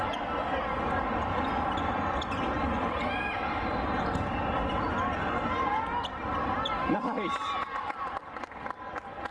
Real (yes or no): yes